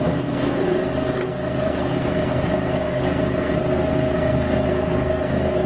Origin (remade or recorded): remade